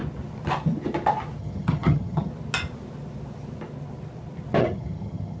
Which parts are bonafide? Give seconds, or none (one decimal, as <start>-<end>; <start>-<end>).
0.0-1.4; 2.3-4.6